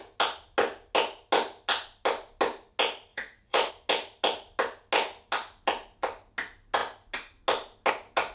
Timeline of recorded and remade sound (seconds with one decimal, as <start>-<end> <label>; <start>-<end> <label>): 0.0-3.1 recorded; 3.1-3.7 remade; 3.7-8.3 recorded